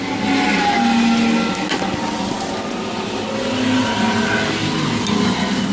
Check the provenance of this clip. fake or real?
real